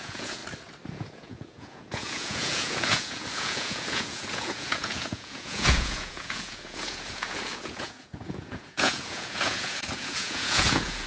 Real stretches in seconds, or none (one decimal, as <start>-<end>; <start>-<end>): 0.4-0.9